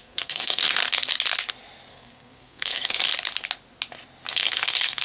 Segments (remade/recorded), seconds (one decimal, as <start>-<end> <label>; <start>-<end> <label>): 0.0-0.8 remade; 0.8-1.9 recorded; 1.9-3.1 remade; 3.1-4.3 recorded; 4.3-5.0 remade